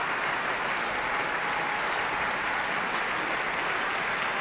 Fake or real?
real